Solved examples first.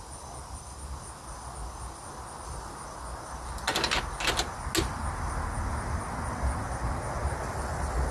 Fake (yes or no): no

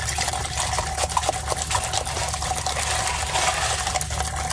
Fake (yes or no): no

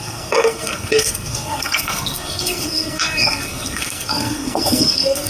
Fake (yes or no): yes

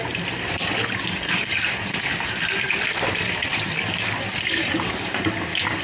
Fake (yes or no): no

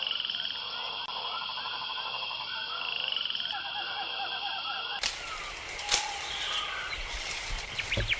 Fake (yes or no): no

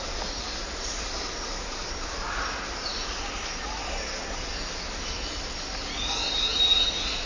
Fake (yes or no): no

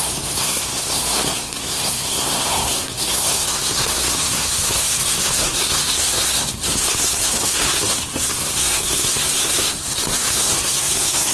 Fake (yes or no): yes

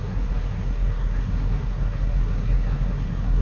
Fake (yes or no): yes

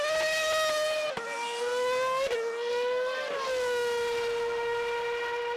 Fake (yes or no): no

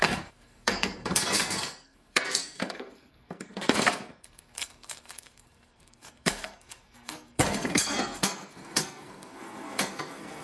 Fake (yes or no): yes